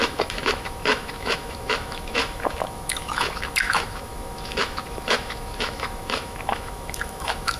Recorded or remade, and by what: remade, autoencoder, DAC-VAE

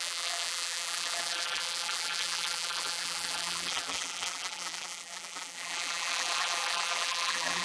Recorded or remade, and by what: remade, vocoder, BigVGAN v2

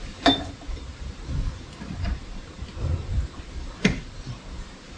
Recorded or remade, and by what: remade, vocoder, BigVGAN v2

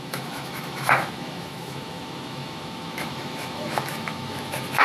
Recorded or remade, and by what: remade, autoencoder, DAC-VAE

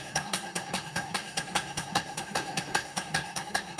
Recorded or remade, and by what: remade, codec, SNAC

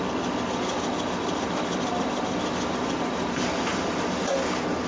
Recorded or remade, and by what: recorded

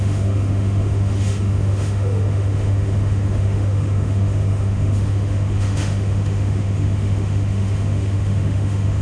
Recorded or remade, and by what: remade, autoencoder, DAC-VAE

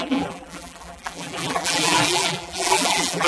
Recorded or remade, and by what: remade, vocoder, BigVGAN v2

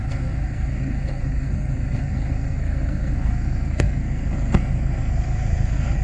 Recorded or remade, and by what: remade, codec, SNAC